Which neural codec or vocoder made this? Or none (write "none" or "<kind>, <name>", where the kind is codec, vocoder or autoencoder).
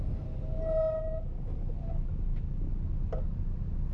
none